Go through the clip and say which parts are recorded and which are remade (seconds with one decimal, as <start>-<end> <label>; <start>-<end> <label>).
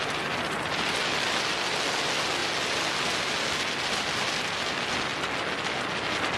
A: 0.0-6.4 recorded